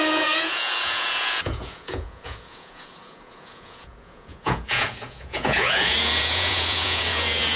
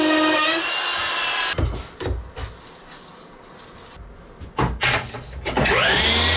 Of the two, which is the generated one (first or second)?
first